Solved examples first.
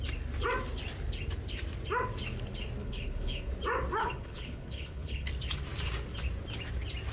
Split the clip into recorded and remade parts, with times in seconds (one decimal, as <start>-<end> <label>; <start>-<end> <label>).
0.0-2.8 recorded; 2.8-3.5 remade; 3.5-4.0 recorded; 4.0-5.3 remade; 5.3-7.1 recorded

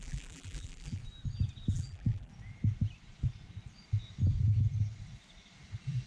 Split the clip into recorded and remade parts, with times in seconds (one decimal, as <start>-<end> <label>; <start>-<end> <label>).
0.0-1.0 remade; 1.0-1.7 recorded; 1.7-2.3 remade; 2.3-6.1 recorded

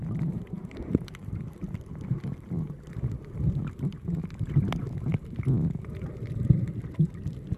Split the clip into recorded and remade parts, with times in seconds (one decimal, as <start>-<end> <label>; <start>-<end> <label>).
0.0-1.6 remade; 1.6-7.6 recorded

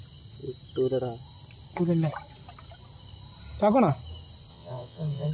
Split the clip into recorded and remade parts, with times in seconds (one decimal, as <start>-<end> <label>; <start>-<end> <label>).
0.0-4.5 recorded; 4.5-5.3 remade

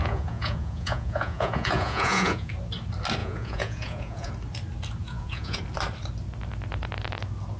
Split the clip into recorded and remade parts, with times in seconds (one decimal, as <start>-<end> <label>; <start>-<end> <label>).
0.0-2.5 remade; 2.5-3.2 recorded; 3.2-4.3 remade; 4.3-5.0 recorded; 5.0-5.6 remade; 5.6-7.6 recorded